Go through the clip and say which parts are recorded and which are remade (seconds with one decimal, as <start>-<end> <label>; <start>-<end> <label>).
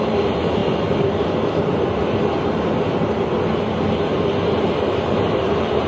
0.0-0.6 remade; 0.6-1.6 recorded; 1.6-2.0 remade; 2.0-3.7 recorded; 3.7-5.9 remade